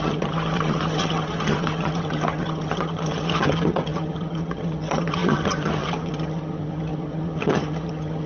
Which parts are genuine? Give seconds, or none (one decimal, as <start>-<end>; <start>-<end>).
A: none